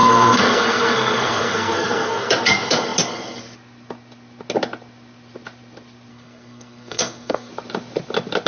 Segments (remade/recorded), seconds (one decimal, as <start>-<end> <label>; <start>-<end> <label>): 0.0-2.3 remade; 2.3-6.1 recorded; 6.1-7.5 remade; 7.5-8.5 recorded